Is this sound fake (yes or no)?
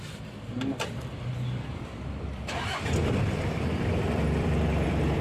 yes